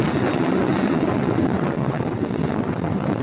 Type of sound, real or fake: fake